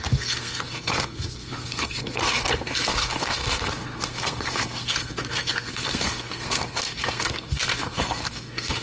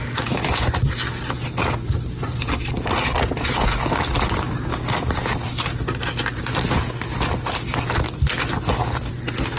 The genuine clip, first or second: second